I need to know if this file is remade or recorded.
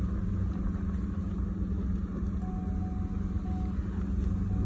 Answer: recorded